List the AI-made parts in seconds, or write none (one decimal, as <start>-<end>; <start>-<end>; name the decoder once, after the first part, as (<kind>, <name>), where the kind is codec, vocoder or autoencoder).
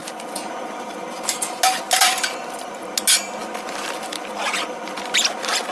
none